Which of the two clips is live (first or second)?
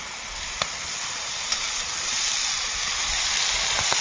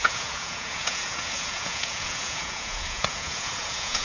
first